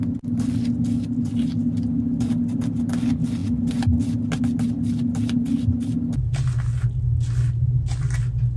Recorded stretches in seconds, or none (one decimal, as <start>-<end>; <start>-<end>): 0.0-8.6